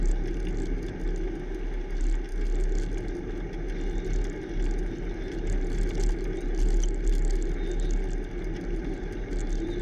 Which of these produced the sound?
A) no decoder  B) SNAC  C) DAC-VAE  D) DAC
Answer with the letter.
A